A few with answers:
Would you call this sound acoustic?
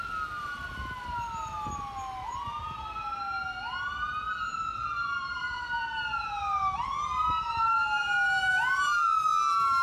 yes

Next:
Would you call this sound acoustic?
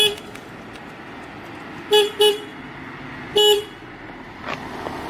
yes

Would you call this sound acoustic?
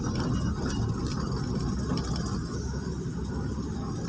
yes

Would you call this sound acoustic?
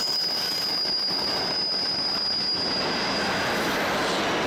yes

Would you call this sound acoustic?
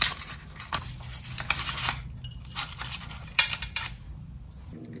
yes